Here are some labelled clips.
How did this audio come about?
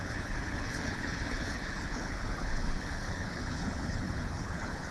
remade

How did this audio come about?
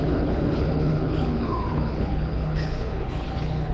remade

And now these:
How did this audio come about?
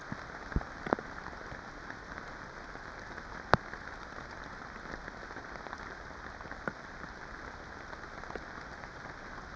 recorded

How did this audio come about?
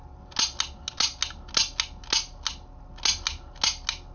recorded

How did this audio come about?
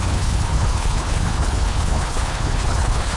remade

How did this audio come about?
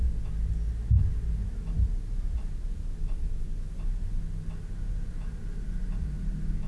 recorded